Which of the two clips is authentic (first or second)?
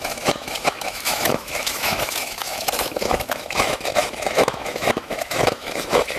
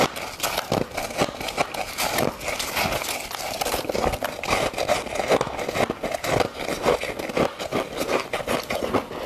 second